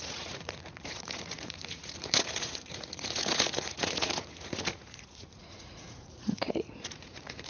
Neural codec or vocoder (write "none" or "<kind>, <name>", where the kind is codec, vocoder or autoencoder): vocoder, Vocos